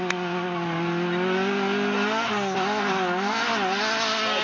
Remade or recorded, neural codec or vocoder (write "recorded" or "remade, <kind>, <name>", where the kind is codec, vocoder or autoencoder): recorded